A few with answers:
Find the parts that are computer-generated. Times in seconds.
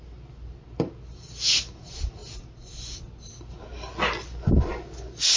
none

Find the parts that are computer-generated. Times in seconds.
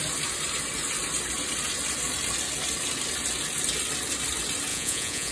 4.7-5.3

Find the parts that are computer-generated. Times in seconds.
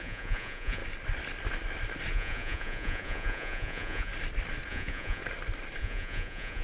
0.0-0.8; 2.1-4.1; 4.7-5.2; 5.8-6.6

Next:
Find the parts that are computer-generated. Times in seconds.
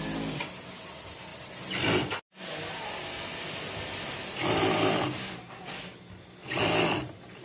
none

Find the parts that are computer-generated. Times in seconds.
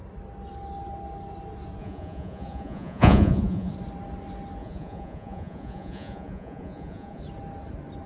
1.8-3.7; 4.6-7.2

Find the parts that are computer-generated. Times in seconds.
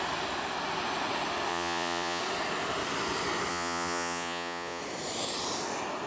1.5-2.2; 3.5-4.8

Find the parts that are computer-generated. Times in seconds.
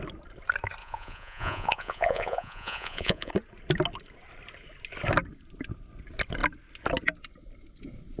0.8-3.3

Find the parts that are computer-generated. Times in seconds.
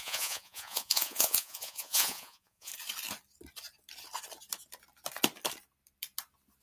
0.0-2.7